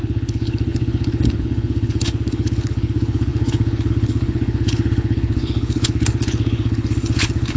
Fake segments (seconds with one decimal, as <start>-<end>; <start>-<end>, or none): 0.0-7.6